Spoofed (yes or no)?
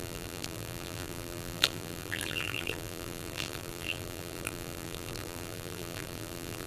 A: yes